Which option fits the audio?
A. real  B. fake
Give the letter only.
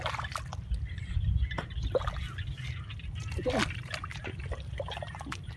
A